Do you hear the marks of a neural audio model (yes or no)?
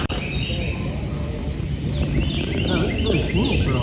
no